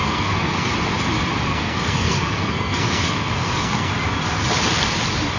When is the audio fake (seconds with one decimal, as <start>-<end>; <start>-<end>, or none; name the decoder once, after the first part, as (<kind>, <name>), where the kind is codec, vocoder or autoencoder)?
0.0-0.7 (codec, SNAC); 1.5-3.9